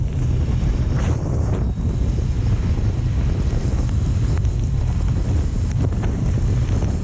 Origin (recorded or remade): recorded